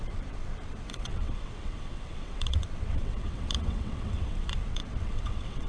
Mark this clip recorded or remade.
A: remade